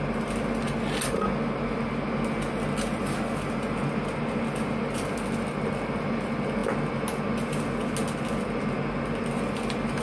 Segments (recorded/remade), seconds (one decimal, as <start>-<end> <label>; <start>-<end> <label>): 0.0-10.0 recorded